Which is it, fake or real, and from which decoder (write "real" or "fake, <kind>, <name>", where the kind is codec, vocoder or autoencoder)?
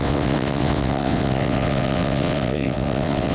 fake, vocoder, WaveNeXt